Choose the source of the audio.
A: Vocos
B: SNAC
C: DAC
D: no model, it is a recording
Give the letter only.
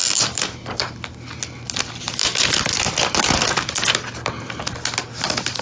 D